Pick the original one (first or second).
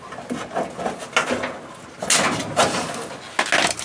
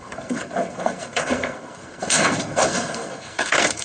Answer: first